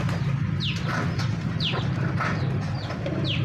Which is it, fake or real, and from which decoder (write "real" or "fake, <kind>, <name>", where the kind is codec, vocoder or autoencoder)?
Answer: real